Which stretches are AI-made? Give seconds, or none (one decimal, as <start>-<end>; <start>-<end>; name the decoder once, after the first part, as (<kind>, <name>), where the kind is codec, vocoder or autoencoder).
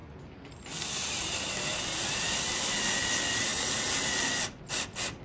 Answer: 3.5-4.0 (vocoder, BigVGAN v2)